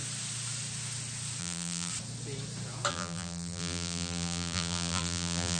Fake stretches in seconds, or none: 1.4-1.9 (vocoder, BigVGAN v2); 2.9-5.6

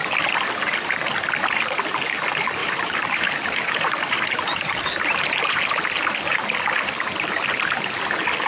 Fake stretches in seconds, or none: 2.6-5.6 (vocoder, BigVGAN v2)

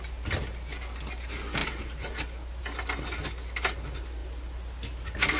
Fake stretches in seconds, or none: none

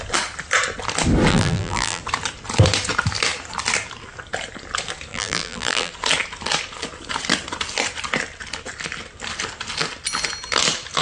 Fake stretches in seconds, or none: 1.3-2.0 (vocoder, BigVGAN v2); 5.1-5.9